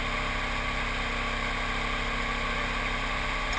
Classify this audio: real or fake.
real